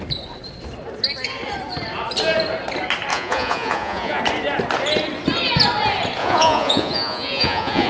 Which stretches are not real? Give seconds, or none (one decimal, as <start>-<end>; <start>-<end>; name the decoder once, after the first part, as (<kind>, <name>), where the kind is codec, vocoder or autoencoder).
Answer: 3.1-4.2 (vocoder, Vocos); 6.2-7.9